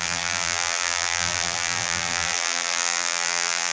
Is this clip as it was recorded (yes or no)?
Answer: no